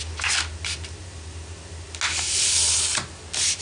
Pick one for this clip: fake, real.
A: real